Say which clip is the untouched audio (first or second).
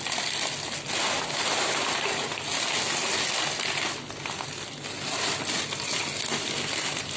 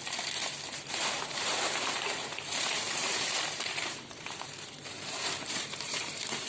first